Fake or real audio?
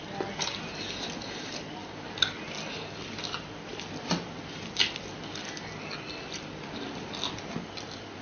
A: real